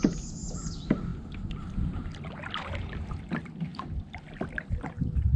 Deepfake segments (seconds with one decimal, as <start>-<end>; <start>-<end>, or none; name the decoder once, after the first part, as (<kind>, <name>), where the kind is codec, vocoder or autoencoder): none